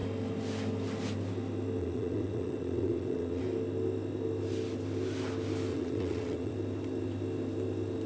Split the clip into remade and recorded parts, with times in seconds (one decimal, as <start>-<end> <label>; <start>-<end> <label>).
0.0-1.8 recorded; 1.8-3.4 remade; 3.4-5.7 recorded; 5.7-6.5 remade; 6.5-8.1 recorded